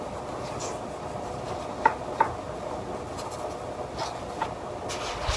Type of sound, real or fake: real